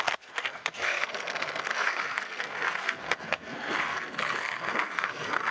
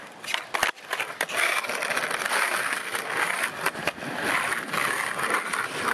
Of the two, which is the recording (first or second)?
second